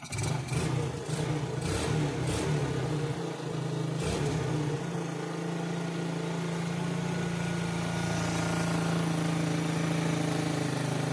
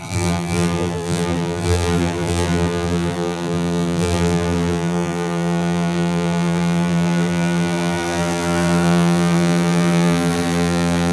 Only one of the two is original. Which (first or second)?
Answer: first